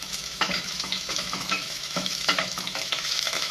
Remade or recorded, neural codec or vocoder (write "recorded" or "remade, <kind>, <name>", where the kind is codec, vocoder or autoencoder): remade, autoencoder, DAC-VAE